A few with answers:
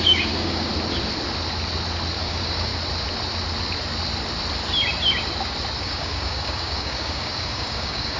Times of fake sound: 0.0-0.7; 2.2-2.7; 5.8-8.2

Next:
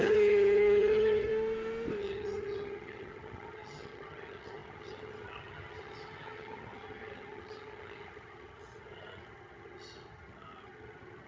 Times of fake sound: 0.0-1.3; 2.0-11.3

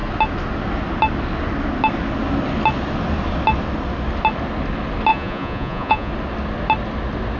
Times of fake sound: 5.1-6.1

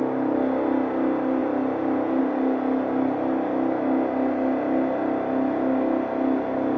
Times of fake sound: none